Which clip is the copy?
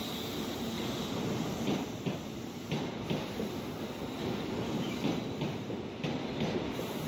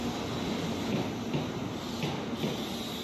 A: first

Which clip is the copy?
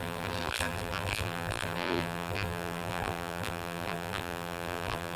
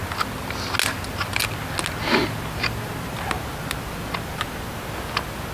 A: first